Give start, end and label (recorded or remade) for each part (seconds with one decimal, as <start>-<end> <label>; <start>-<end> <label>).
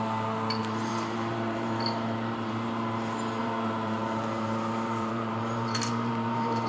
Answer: 0.0-0.6 recorded; 0.6-2.7 remade; 2.7-3.4 recorded; 3.4-6.7 remade